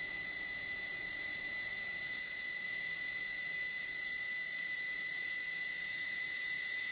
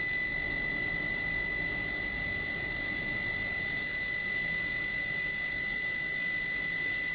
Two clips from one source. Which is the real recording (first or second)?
second